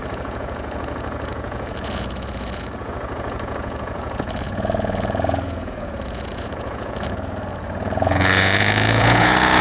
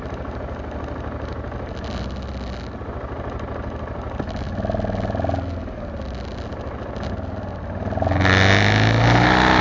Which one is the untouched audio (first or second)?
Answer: second